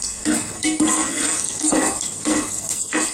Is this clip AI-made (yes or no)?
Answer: yes